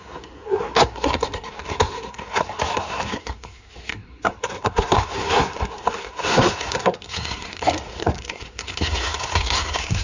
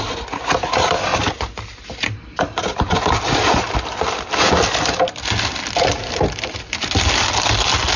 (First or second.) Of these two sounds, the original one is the second